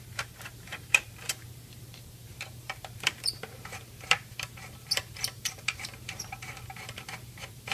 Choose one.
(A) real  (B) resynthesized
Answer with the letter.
B